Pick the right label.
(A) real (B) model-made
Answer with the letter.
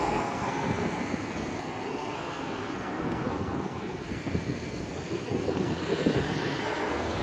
B